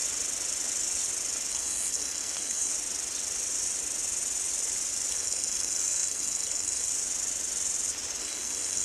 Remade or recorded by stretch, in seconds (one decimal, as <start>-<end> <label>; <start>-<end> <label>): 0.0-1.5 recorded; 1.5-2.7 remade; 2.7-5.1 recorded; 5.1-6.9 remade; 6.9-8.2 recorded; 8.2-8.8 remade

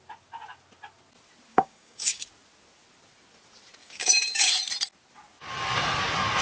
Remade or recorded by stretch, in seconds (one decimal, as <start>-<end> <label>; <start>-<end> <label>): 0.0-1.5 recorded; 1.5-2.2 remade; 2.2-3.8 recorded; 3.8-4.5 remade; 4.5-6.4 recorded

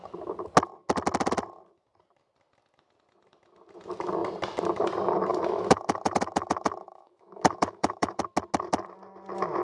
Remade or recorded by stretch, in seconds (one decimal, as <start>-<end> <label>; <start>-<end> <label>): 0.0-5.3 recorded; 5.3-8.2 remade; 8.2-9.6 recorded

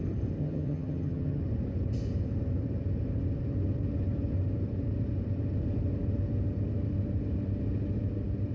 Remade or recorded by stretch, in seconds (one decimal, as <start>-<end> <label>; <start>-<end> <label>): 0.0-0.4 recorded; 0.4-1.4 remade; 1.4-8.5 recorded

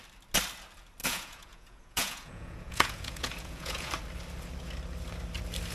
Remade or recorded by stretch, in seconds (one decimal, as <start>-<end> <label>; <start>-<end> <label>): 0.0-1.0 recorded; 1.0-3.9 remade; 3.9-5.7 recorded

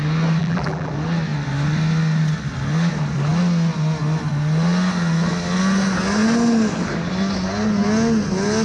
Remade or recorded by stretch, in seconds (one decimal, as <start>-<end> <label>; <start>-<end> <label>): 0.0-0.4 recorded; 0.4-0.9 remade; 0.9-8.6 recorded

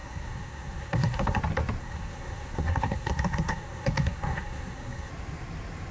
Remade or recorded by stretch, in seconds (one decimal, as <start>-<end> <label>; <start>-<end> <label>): 0.0-1.4 remade; 1.4-1.8 recorded; 1.8-5.1 remade; 5.1-5.9 recorded

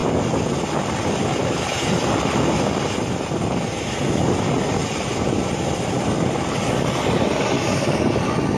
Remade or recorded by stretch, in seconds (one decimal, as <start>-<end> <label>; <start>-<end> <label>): 0.0-4.8 recorded; 4.8-6.9 remade; 6.9-8.6 recorded